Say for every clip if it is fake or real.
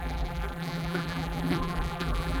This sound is fake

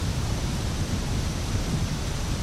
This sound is fake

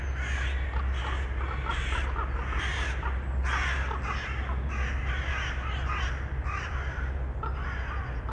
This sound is real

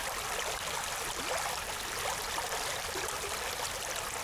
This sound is real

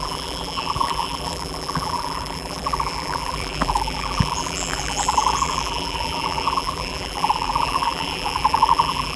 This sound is fake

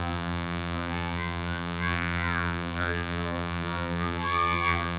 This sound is fake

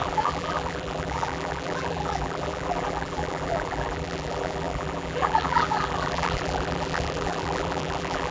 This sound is fake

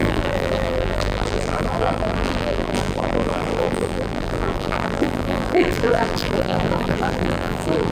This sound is fake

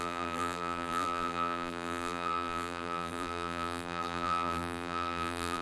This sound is fake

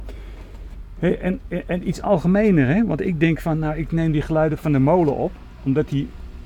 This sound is real